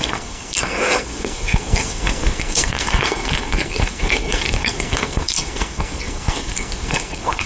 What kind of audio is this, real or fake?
fake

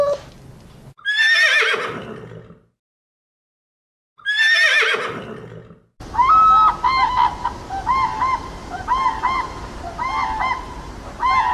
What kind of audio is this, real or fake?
real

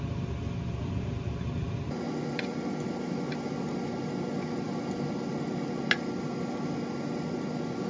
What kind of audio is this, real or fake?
real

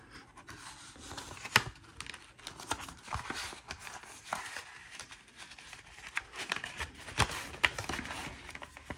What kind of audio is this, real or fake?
real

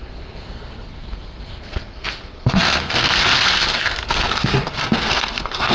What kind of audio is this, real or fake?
fake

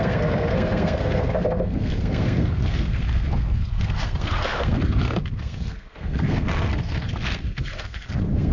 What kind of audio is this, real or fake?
fake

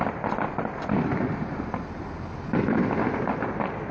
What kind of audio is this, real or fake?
real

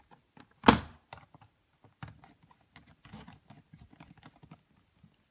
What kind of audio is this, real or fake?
real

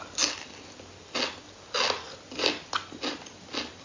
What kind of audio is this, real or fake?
real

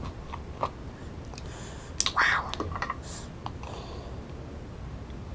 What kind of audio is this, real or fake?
real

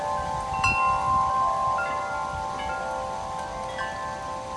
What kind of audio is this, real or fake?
real